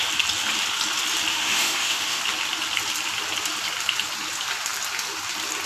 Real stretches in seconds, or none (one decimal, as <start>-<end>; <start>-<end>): 0.0-1.3; 2.2-5.7